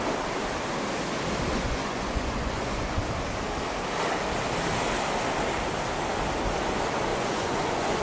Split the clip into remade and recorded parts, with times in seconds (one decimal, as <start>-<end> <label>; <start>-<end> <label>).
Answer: 0.0-1.5 recorded; 1.5-3.0 remade; 3.0-7.1 recorded; 7.1-8.0 remade